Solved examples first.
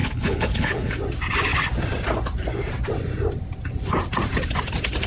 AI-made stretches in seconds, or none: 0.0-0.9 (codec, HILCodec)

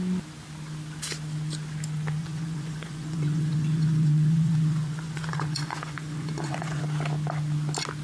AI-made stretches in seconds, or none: 2.2-6.8 (vocoder, Vocos)

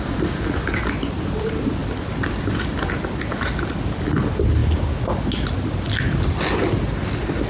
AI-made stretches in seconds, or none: none

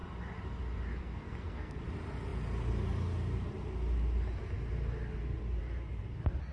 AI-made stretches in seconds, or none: 1.0-1.8 (codec, SNAC)